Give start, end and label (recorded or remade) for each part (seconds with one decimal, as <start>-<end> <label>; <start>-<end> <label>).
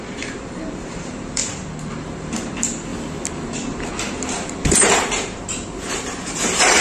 0.0-1.4 remade; 1.4-1.9 recorded; 1.9-2.9 remade; 2.9-4.7 recorded; 4.7-6.8 remade